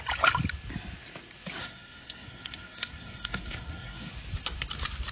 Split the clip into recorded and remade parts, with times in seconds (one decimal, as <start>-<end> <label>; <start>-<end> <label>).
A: 0.0-1.6 recorded; 1.6-4.1 remade; 4.1-5.1 recorded